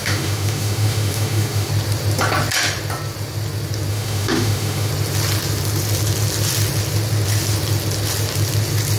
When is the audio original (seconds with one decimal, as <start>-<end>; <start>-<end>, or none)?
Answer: 1.7-3.9; 4.9-9.0